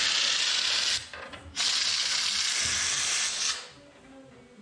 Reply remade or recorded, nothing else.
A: recorded